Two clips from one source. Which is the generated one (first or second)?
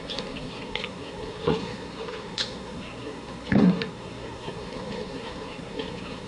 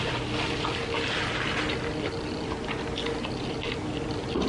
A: first